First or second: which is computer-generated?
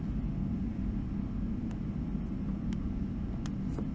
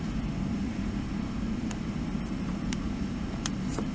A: second